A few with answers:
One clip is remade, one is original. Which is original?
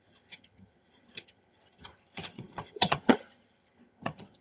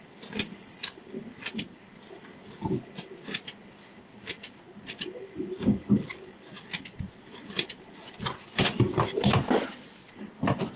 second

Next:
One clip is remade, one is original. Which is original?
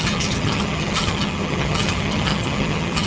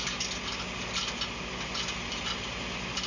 second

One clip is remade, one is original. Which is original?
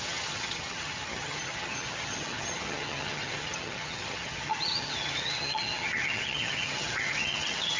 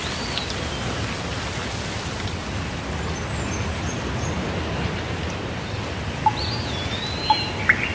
second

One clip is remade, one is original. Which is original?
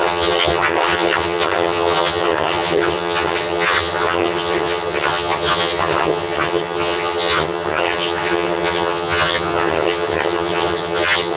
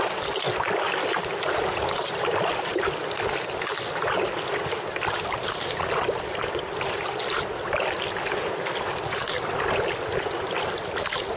second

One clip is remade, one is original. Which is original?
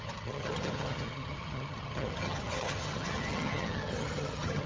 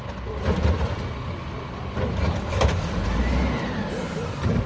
second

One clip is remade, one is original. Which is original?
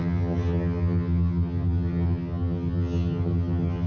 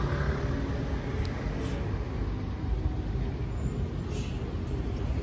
second